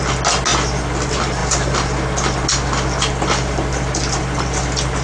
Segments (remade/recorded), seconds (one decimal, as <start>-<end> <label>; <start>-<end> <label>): 0.0-5.0 recorded